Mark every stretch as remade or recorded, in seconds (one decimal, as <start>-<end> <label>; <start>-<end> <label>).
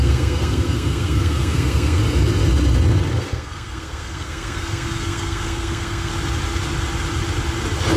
0.0-2.0 remade; 2.0-3.1 recorded; 3.1-6.1 remade; 6.1-8.0 recorded